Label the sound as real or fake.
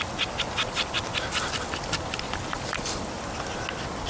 real